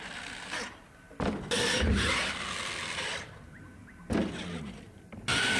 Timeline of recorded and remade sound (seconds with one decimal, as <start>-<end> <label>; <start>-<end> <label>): 0.0-5.6 recorded